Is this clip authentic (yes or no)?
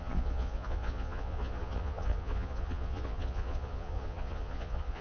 no